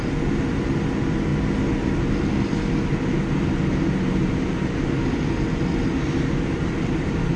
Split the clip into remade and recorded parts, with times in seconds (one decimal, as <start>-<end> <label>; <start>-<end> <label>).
0.0-7.4 recorded